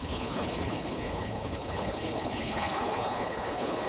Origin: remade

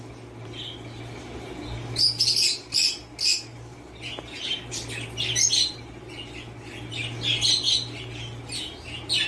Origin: recorded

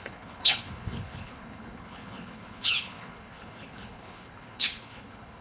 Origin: remade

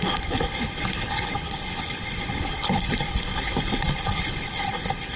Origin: remade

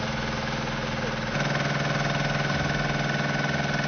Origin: recorded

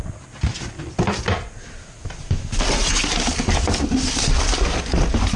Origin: recorded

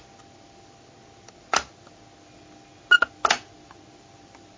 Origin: recorded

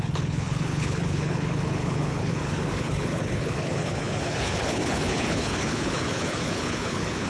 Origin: remade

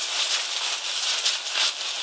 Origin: recorded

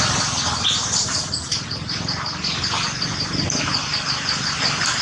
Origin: recorded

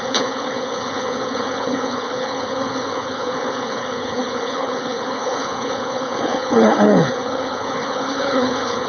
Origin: remade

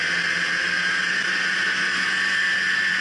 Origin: recorded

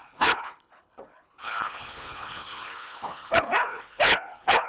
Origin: remade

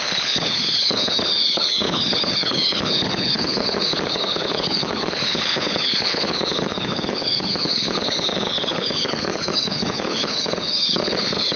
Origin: remade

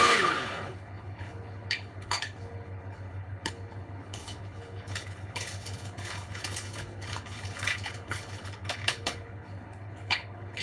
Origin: remade